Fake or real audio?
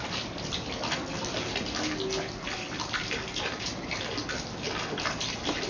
real